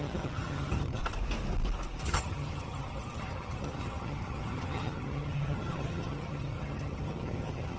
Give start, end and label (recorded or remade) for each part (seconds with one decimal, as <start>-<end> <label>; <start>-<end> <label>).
0.0-1.0 remade; 1.0-2.0 recorded; 2.0-7.8 remade